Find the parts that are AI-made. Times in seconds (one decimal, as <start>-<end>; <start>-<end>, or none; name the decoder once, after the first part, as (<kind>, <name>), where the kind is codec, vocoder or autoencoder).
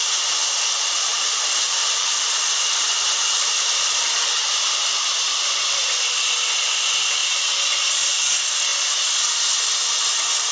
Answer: 1.1-6.2 (vocoder, BigVGAN v2); 8.7-9.6